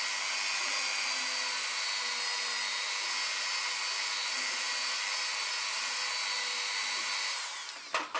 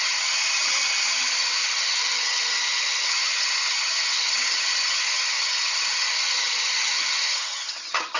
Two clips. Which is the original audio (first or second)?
first